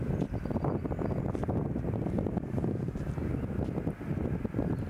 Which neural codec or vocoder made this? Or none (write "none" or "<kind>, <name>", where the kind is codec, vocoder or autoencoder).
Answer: none